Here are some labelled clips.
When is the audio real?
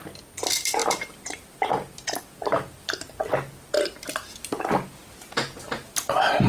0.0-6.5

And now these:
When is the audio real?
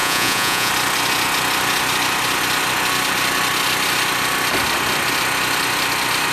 0.7-6.3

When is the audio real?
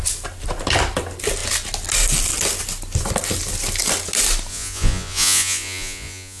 0.0-4.5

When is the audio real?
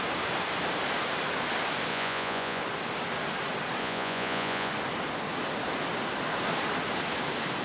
0.0-1.9; 2.6-3.8; 4.7-7.6